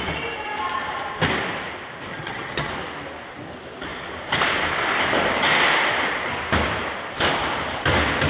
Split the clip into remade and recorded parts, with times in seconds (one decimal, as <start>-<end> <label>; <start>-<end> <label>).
0.0-2.1 recorded; 2.1-2.7 remade; 2.7-8.3 recorded